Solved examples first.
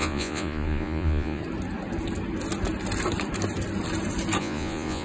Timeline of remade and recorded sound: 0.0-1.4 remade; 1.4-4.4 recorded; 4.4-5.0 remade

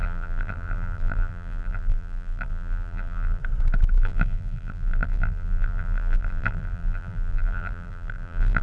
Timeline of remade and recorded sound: 0.0-3.4 remade; 3.4-4.0 recorded; 4.0-8.6 remade

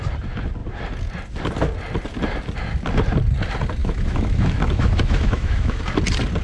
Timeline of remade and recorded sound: 0.0-3.8 recorded; 3.8-5.8 remade; 5.8-6.4 recorded

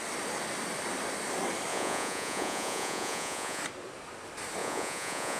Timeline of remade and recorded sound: 0.0-1.7 recorded; 1.7-3.6 remade; 3.6-4.6 recorded; 4.6-5.4 remade

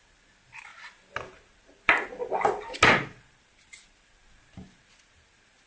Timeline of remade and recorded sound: 0.0-5.7 recorded